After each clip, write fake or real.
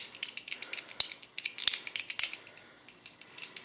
real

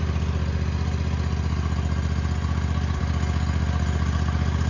real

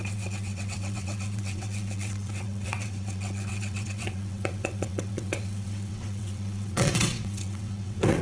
fake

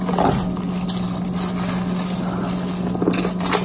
real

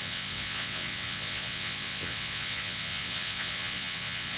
fake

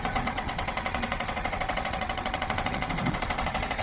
fake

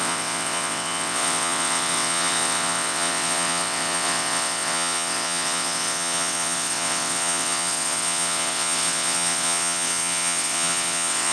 fake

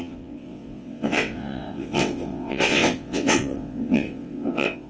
fake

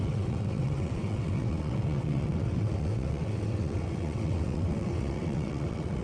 fake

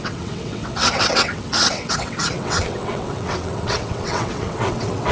fake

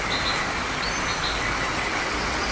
real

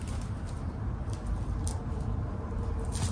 real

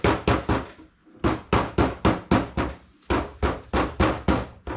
real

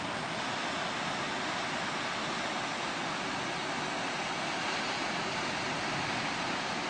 real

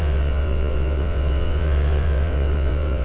fake